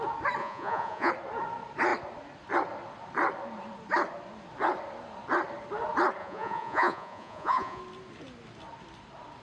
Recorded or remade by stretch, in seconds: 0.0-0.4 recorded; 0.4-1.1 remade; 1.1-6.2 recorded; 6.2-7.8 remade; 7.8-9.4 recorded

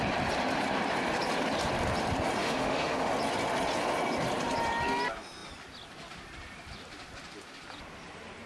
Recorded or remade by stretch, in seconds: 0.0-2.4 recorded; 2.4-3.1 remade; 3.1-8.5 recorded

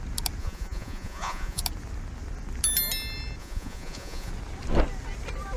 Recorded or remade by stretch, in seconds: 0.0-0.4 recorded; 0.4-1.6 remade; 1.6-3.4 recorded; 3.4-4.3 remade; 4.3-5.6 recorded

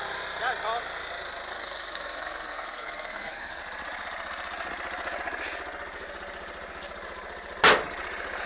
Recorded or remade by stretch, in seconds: 0.0-1.5 recorded; 1.5-3.6 remade; 3.6-8.5 recorded

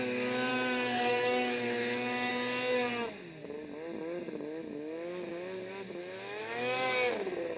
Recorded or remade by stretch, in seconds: 0.0-0.5 recorded; 0.5-2.3 remade; 2.3-6.0 recorded; 6.0-7.1 remade; 7.1-7.6 recorded

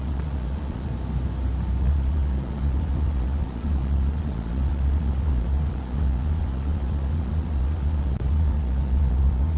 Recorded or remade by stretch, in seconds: 0.0-0.9 remade; 0.9-1.8 recorded; 1.8-9.6 remade

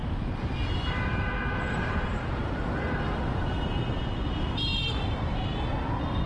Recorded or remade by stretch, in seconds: 0.0-3.8 remade; 3.8-4.7 recorded; 4.7-5.6 remade; 5.6-6.3 recorded